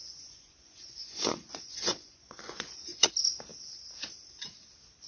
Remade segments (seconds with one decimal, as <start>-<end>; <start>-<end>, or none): 0.0-3.1

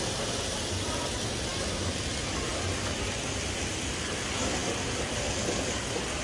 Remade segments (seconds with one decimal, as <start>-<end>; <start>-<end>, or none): none

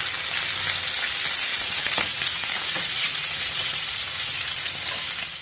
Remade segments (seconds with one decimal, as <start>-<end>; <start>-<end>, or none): 1.5-4.7

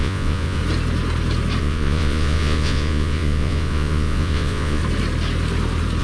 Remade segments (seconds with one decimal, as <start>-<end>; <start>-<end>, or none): 0.0-0.6; 1.6-4.8

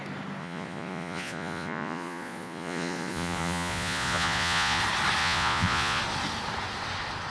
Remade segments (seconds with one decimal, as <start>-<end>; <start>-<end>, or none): 0.4-4.8; 5.2-6.0